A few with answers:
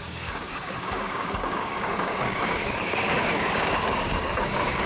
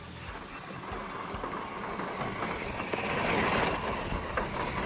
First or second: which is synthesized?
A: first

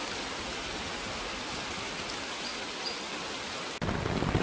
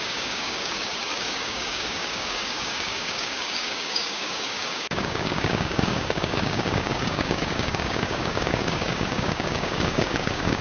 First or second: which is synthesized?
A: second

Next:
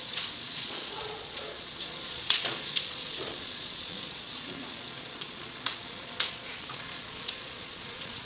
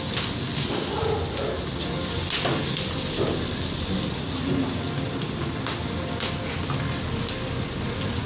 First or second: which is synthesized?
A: first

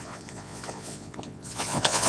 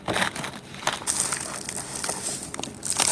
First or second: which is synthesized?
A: first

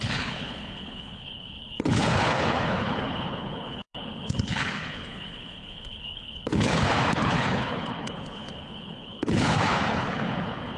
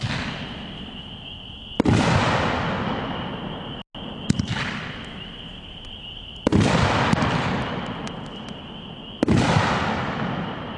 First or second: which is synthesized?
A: first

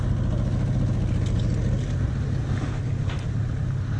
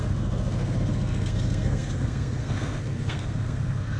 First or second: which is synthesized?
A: second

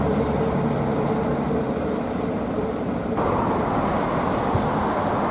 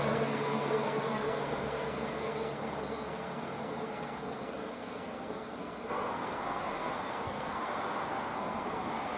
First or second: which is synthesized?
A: second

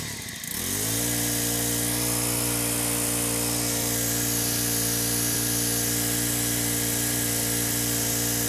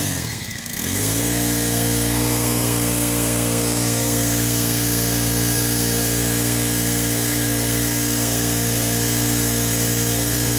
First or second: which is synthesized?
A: second